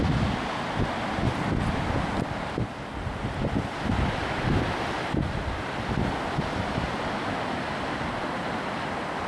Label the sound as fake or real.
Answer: real